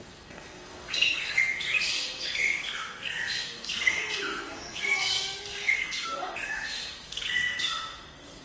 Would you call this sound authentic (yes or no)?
no